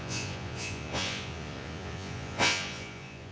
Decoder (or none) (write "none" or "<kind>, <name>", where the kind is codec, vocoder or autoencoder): vocoder, Vocos